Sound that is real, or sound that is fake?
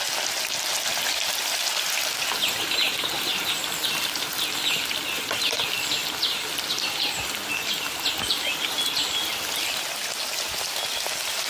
real